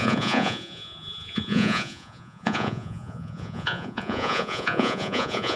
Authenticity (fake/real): fake